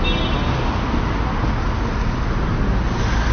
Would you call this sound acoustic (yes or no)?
yes